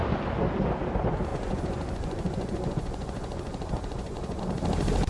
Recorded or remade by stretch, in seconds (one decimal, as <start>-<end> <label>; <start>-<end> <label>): 0.0-1.3 recorded; 1.3-4.4 remade; 4.4-5.1 recorded